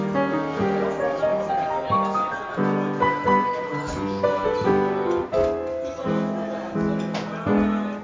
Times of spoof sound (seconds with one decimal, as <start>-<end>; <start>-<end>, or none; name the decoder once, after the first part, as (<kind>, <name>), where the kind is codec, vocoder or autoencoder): none